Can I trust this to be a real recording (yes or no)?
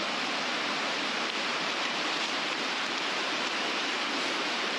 no